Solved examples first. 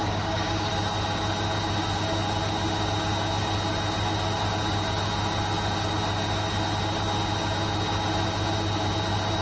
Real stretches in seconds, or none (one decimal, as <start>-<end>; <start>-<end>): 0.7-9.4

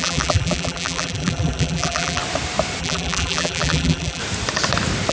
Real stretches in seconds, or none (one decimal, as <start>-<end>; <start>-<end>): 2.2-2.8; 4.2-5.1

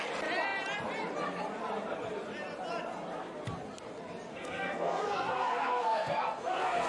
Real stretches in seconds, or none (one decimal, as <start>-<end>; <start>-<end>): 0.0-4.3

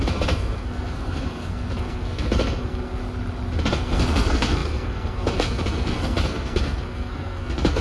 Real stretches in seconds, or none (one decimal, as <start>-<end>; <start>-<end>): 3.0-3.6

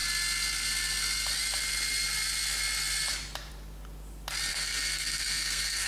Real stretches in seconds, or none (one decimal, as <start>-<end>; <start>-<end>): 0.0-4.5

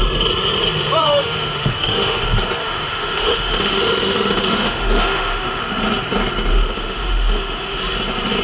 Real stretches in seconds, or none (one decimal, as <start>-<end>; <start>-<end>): 0.0-1.0; 2.2-2.6; 5.6-6.5; 7.8-8.4